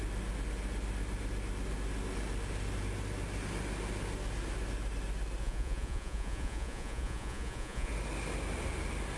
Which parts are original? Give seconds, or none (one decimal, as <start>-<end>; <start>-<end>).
0.0-5.4; 7.9-9.2